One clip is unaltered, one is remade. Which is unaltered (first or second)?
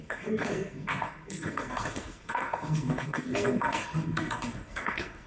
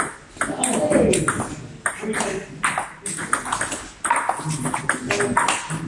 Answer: second